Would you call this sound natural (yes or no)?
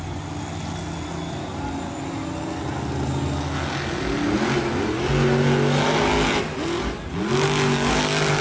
yes